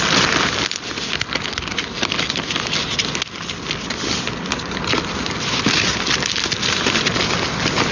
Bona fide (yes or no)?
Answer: yes